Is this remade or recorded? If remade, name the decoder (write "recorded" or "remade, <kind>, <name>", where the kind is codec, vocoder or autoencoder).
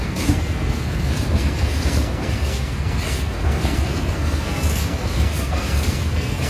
remade, codec, SNAC